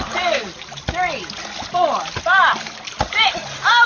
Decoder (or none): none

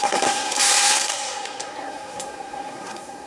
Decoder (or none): codec, SNAC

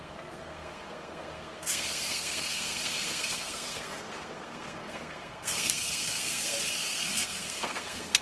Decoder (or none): codec, SNAC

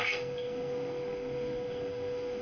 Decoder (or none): codec, SNAC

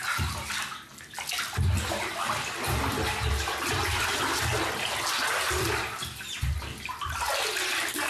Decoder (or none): none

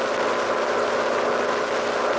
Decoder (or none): none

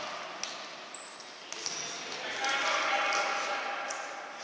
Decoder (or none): none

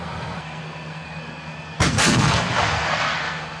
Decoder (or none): codec, SNAC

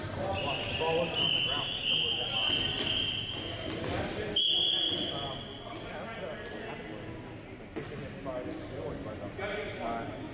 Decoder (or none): none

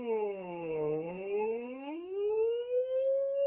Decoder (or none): codec, SNAC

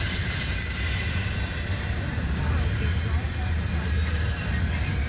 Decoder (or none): none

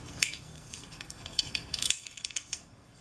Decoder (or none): codec, SNAC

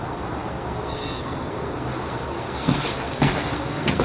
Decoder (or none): codec, SNAC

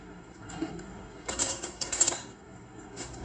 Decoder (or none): codec, SNAC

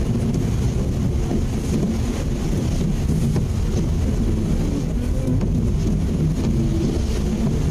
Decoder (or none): none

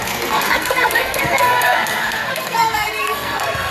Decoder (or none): codec, SNAC